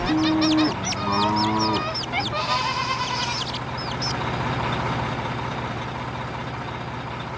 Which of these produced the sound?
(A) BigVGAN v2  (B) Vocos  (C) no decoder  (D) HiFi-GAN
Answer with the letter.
C